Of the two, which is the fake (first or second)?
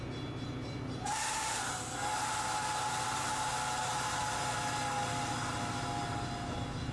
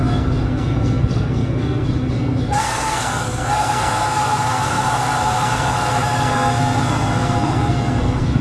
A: second